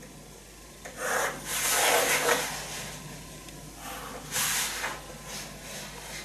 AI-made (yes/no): no